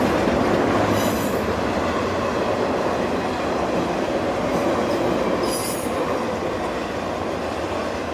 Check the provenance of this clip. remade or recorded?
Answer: recorded